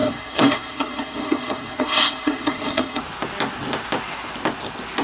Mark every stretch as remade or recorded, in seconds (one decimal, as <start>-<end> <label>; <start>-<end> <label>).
0.0-3.0 remade; 3.0-5.0 recorded